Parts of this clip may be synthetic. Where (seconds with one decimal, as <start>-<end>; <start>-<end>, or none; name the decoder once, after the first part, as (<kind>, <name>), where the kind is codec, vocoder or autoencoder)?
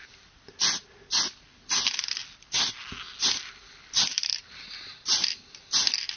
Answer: none